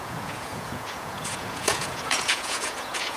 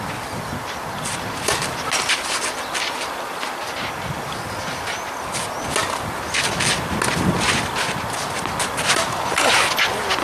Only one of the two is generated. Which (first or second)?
first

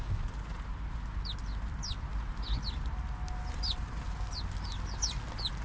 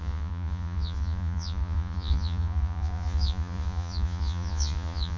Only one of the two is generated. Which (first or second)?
second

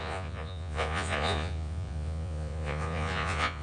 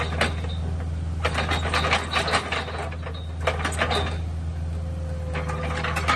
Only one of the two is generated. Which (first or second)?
first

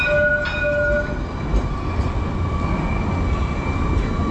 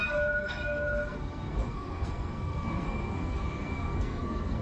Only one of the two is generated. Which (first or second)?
second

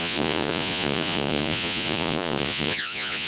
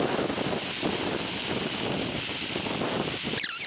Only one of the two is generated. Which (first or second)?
first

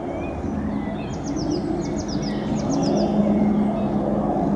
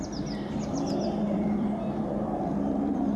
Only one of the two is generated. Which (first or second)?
second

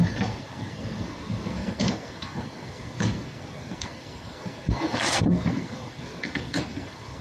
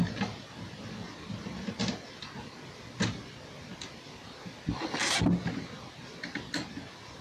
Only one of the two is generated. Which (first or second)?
first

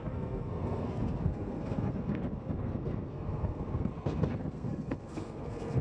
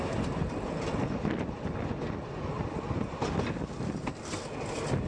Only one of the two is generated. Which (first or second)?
first